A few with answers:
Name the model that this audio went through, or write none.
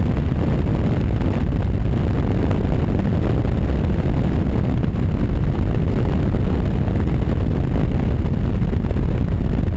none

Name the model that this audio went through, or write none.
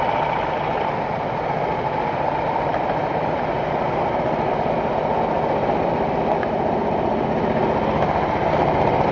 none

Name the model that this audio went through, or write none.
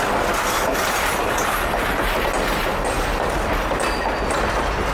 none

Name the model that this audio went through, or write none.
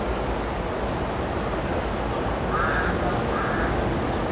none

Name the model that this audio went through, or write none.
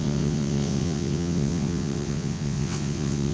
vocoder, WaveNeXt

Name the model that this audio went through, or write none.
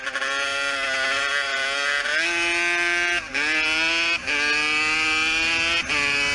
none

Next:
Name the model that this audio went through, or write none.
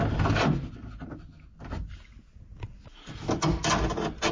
none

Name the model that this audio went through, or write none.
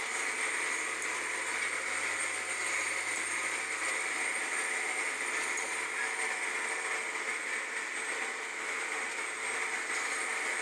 none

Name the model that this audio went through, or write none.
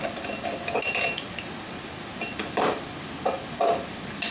vocoder, BigVGAN v2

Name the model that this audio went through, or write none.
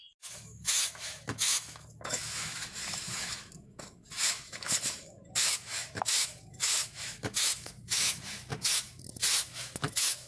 autoencoder, DAC-VAE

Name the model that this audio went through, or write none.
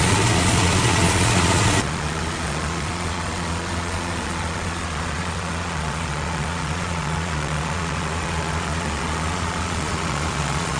vocoder, Vocos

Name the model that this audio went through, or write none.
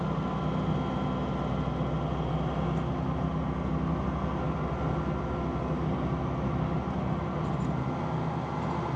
none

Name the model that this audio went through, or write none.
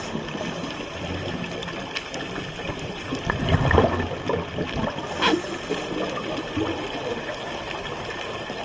none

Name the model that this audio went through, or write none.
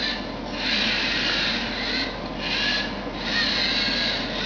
none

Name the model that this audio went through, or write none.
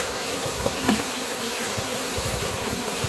codec, SNAC